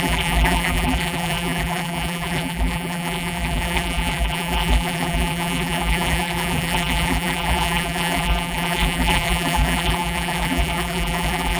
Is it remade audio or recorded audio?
remade